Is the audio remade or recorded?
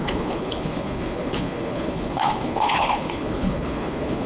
remade